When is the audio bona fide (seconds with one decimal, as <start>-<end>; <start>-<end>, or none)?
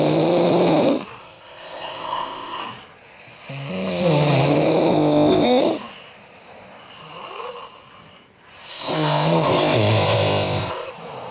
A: 0.0-1.2; 2.6-4.9; 5.6-8.7; 10.9-11.3